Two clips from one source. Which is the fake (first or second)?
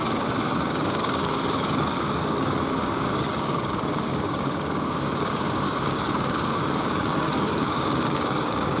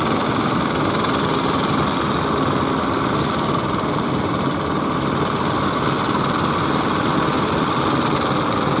first